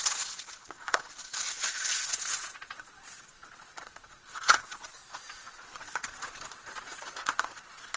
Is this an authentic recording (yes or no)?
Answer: no